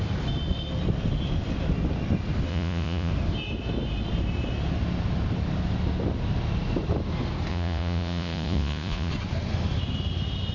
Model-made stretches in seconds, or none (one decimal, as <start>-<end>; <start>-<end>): 2.5-3.1; 7.5-9.1